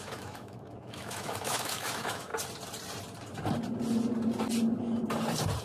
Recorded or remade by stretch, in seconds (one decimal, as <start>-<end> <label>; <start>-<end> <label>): 0.0-2.3 remade; 2.3-5.6 recorded